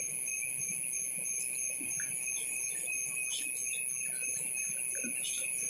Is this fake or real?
real